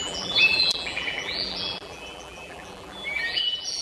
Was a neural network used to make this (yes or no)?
yes